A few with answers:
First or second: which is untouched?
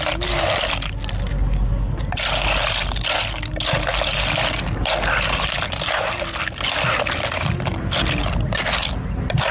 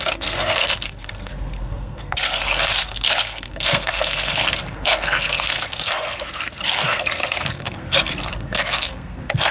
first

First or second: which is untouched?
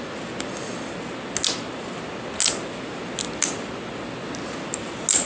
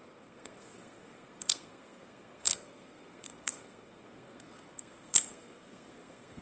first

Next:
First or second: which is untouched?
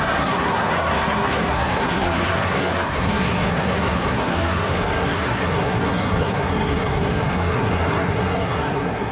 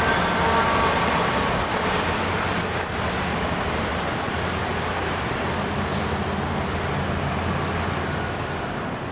second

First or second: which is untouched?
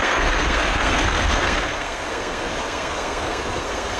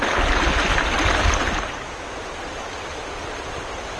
second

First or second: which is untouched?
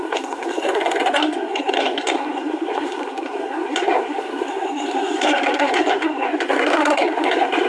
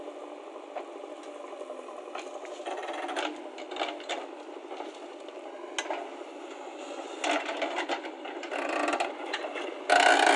second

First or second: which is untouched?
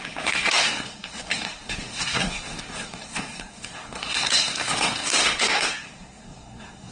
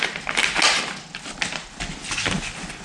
second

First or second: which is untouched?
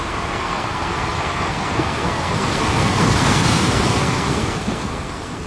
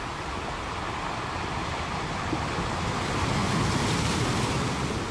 second